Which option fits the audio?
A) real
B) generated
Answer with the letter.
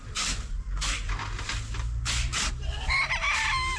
A